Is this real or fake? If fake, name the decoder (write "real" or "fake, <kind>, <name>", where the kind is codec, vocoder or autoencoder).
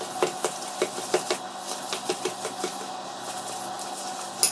real